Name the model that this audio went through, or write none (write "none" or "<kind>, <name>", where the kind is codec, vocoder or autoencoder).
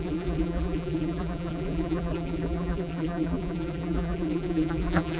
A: vocoder, BigVGAN v2